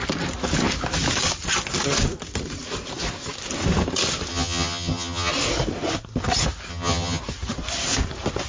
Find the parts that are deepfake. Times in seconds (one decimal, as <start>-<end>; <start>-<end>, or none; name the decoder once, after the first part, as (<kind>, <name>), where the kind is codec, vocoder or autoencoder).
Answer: 4.3-5.3 (vocoder, HiFi-GAN); 6.7-7.2